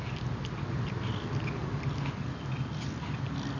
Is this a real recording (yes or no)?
yes